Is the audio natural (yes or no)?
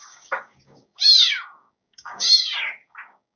no